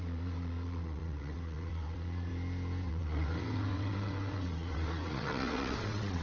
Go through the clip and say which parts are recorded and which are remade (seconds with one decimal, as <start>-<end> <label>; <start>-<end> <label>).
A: 0.0-2.3 remade; 2.3-2.9 recorded; 2.9-6.2 remade